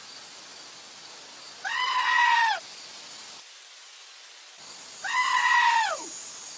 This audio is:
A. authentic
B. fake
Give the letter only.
A